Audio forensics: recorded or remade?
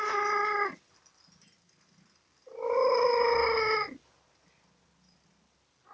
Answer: recorded